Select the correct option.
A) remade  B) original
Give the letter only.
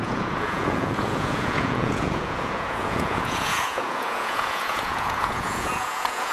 A